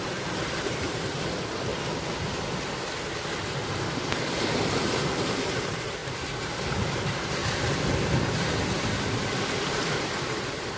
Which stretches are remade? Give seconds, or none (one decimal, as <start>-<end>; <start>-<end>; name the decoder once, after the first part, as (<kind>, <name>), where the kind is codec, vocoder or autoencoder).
0.0-1.7 (vocoder, BigVGAN v2); 5.3-6.0; 7.0-7.4; 9.9-10.8